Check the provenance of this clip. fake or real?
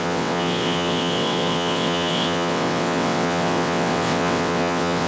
fake